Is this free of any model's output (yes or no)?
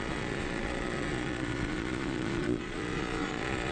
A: no